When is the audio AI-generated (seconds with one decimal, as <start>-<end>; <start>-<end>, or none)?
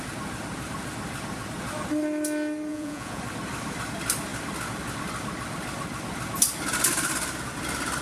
2.7-3.2